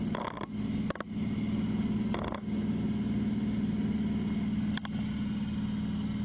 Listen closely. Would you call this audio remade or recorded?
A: recorded